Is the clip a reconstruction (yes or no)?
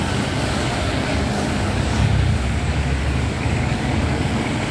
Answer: yes